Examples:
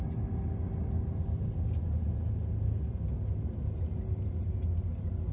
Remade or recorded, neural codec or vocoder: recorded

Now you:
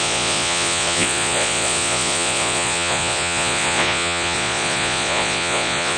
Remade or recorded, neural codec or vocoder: remade, vocoder, Vocos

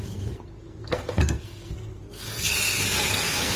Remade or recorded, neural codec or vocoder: remade, codec, SNAC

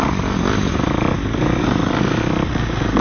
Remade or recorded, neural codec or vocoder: recorded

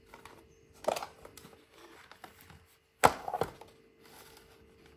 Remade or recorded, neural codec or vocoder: recorded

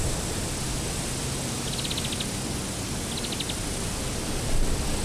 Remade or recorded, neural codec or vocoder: recorded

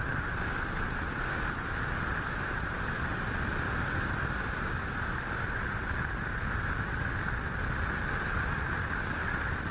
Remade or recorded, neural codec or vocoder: recorded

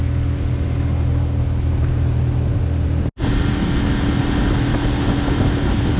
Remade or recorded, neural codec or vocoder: recorded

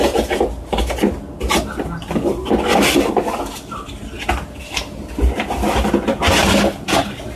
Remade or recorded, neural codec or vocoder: recorded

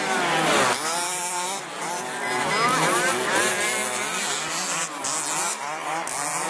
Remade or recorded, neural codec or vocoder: recorded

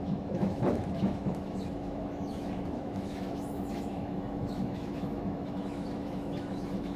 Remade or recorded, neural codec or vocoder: remade, autoencoder, DAC-VAE